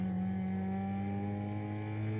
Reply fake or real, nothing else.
real